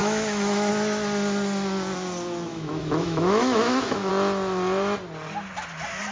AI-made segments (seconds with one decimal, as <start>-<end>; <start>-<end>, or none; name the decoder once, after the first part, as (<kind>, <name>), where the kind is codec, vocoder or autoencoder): 0.0-0.7 (autoencoder, DAC-VAE); 2.5-4.1